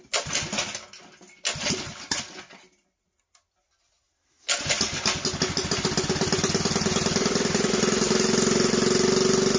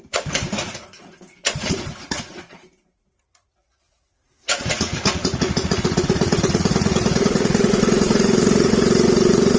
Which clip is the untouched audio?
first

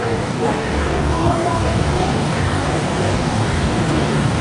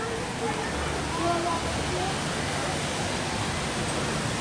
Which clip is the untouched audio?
second